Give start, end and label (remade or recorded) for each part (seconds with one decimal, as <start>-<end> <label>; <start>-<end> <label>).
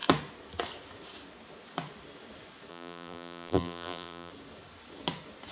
0.0-2.7 recorded; 2.7-4.3 remade; 4.3-5.5 recorded